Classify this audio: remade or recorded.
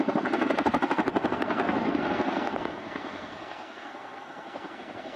remade